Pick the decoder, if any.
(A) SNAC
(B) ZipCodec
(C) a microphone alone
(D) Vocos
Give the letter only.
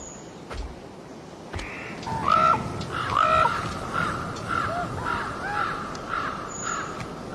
C